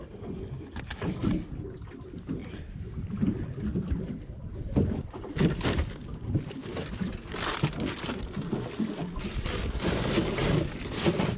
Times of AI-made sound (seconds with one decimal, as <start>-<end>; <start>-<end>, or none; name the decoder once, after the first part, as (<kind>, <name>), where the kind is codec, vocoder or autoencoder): 2.4-7.1 (vocoder, BigVGAN v2); 10.4-11.4